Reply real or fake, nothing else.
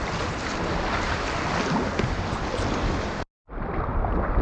real